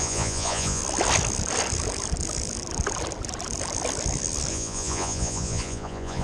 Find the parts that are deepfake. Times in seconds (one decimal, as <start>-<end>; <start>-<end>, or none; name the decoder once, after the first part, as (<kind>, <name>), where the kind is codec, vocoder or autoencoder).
0.0-0.8 (vocoder, Vocos); 4.5-6.2